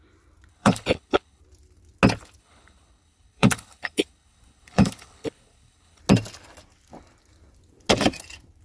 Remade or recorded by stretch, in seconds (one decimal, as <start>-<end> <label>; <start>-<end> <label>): 0.0-0.5 recorded; 0.5-1.4 remade; 1.4-2.4 recorded; 2.4-6.0 remade; 6.0-8.6 recorded